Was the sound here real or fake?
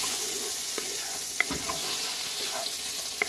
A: fake